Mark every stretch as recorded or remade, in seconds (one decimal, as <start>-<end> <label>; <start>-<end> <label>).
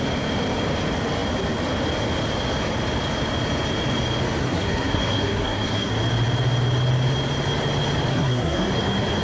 0.0-4.4 recorded; 4.4-5.9 remade; 5.9-8.1 recorded; 8.1-8.7 remade; 8.7-9.2 recorded